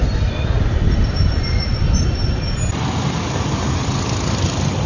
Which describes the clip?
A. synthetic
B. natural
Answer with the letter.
B